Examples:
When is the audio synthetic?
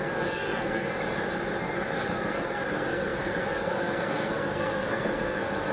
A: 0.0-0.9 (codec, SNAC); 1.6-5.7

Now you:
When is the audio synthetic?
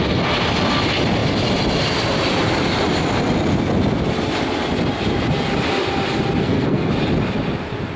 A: 6.4-6.9 (codec, SNAC)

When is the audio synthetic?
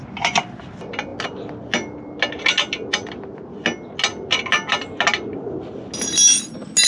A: none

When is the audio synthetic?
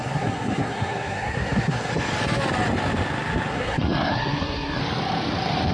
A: 0.0-1.9 (codec, SNAC); 3.5-4.8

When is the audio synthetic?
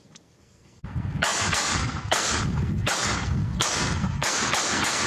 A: 0.0-5.1 (codec, SNAC)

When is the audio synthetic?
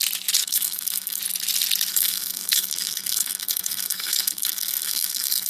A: 0.4-1.2 (codec, SNAC); 1.9-5.5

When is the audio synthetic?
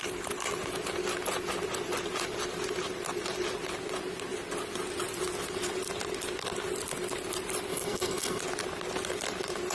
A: 7.7-8.4 (codec, SNAC)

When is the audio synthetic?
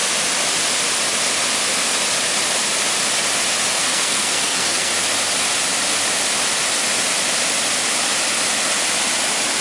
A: 3.8-4.9 (codec, SNAC)